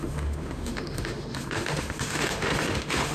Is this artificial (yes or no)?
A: yes